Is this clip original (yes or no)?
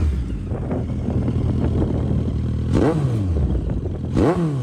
yes